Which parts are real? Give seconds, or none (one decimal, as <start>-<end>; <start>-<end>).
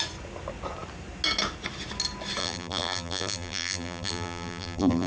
0.0-2.4